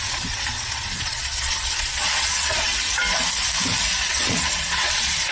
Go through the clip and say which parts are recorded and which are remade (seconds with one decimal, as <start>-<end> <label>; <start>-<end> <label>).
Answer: 0.0-2.7 remade; 2.7-4.1 recorded; 4.1-5.3 remade